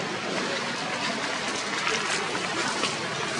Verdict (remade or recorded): recorded